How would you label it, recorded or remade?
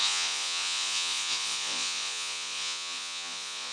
remade